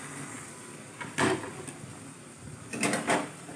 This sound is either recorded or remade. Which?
recorded